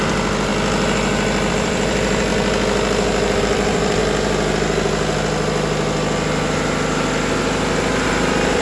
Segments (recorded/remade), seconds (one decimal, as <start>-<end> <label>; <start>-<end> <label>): 0.0-0.5 remade; 0.5-1.5 recorded; 1.5-2.3 remade; 2.3-3.4 recorded; 3.4-4.0 remade; 4.0-8.1 recorded; 8.1-8.6 remade